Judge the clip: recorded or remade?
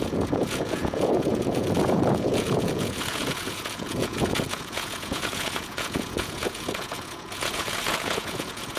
remade